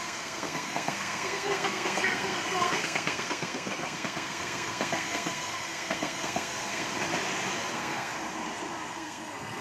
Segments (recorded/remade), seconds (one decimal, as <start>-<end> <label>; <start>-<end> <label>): 0.0-6.9 remade; 6.9-7.7 recorded; 7.7-8.1 remade; 8.1-8.9 recorded; 8.9-9.6 remade